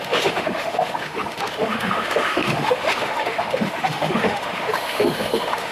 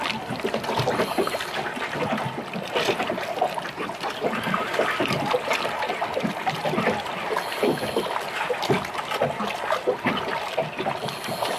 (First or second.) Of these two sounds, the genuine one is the second